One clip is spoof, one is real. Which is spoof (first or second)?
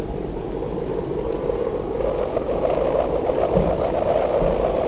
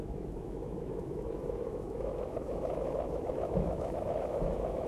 second